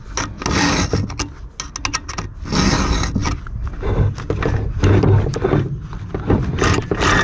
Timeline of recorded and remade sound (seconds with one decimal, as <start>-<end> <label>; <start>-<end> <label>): 0.0-7.2 recorded